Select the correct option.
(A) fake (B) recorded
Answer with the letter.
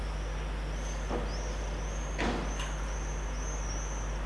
B